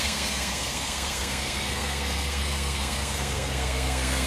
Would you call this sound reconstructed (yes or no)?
yes